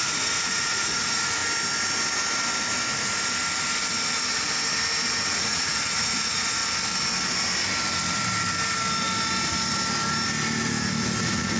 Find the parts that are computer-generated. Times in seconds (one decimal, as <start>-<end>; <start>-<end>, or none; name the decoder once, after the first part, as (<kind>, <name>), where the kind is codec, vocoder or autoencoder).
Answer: 0.0-1.4 (vocoder, Vocos); 5.4-6.6; 11.2-11.6